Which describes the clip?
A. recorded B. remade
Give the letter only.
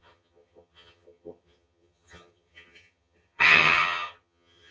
B